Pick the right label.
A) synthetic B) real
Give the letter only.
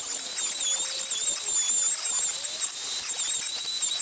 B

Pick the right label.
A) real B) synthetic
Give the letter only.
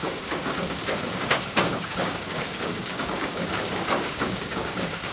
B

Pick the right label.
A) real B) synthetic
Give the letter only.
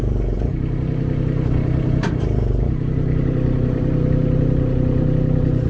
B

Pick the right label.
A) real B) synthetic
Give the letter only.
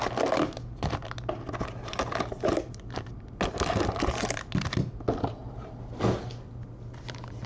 A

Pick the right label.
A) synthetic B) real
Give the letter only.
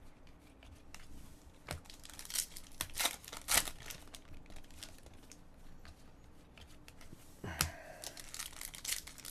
B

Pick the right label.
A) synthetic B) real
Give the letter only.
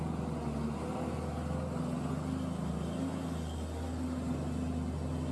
B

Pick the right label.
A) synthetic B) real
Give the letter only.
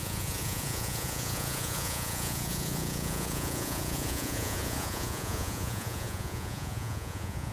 A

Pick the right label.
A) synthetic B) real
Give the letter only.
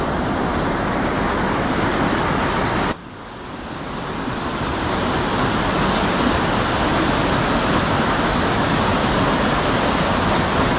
B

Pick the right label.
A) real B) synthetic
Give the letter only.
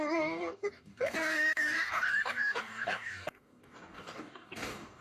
B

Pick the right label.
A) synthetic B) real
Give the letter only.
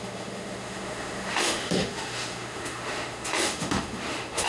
A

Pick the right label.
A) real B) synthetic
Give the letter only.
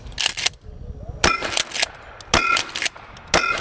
A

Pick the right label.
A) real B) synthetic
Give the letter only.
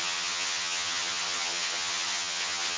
B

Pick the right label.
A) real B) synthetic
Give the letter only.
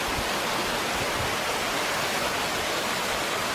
A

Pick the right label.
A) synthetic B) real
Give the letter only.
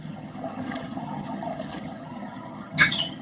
A